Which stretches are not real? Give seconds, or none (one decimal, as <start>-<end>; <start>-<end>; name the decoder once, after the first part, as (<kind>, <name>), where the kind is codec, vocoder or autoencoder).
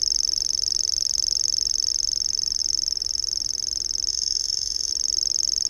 4.1-4.9 (autoencoder, DAC-VAE)